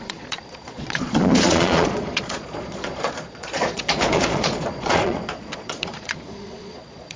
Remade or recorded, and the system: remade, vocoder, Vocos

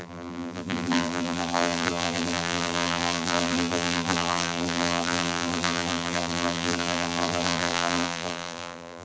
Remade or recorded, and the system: remade, vocoder, BigVGAN v2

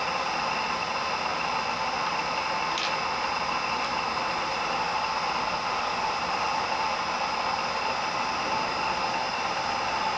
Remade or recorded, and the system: recorded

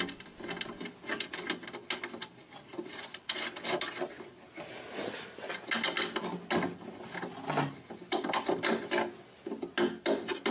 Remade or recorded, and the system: recorded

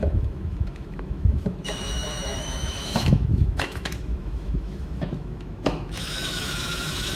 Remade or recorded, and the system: remade, autoencoder, DAC-VAE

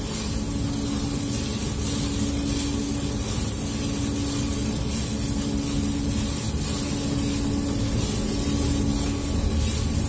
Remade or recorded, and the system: recorded